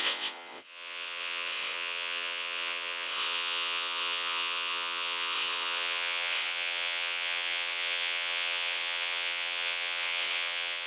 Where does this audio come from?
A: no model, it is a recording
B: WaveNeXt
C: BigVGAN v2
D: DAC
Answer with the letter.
B